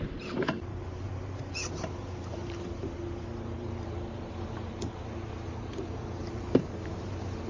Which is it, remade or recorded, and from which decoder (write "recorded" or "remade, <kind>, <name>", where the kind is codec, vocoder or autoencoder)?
remade, vocoder, BigVGAN v2